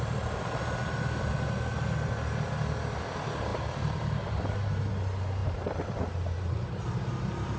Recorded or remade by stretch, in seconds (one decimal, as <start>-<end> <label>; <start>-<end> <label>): 0.0-3.5 recorded; 3.5-4.9 remade; 4.9-5.4 recorded; 5.4-7.6 remade